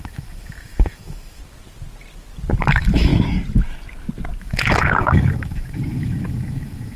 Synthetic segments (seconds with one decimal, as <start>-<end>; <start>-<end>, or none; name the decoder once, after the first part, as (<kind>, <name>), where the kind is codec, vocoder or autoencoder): 0.0-1.4 (autoencoder, DAC-VAE); 2.6-3.1; 4.4-7.0

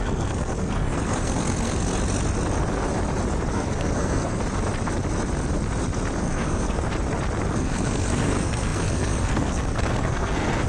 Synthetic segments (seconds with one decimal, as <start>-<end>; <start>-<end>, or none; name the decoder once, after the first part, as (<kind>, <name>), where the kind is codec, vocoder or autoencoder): 0.0-1.9 (codec, SNAC); 3.5-4.4; 6.2-6.9; 7.5-10.7

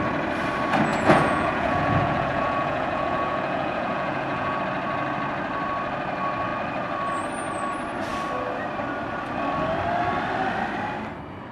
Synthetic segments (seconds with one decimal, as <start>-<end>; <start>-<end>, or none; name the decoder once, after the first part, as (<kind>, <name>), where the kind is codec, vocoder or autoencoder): 0.9-4.6 (vocoder, Vocos)

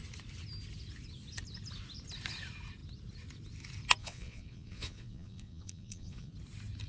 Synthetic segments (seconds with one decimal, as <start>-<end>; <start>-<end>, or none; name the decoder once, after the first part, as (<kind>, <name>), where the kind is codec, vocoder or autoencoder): 4.0-6.3 (vocoder, Vocos)

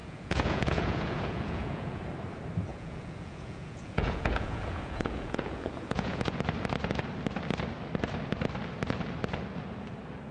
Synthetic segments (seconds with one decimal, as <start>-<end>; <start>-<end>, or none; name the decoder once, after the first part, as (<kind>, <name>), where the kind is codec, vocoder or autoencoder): 0.0-2.0 (vocoder, Vocos); 2.7-6.4